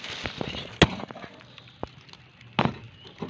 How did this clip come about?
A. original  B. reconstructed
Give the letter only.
A